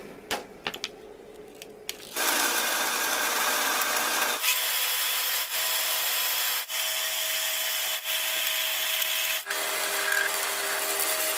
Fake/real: real